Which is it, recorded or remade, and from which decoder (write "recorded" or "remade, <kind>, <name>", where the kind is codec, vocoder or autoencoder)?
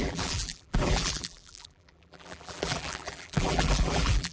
remade, vocoder, BigVGAN v2